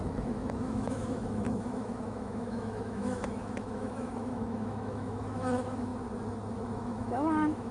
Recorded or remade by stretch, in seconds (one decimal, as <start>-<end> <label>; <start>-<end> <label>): 0.0-5.9 remade; 5.9-6.5 recorded; 6.5-7.7 remade